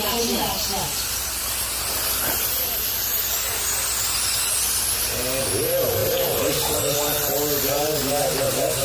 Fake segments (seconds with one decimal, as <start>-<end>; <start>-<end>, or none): none